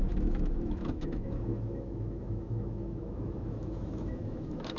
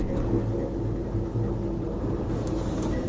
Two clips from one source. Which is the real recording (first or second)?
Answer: second